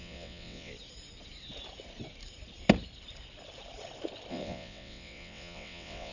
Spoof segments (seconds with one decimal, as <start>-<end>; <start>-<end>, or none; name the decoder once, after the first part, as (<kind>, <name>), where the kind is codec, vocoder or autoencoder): 0.0-0.7 (vocoder, WaveNeXt); 4.3-6.1